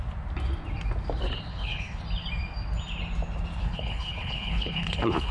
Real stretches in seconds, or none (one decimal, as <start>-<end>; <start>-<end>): 0.0-1.5; 2.0-3.6